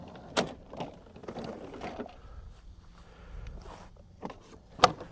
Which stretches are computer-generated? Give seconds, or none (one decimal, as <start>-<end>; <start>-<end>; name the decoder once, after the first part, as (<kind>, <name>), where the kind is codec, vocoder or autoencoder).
1.2-4.3 (vocoder, BigVGAN v2)